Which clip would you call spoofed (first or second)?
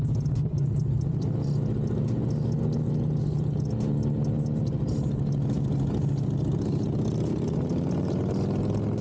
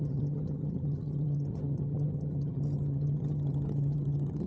second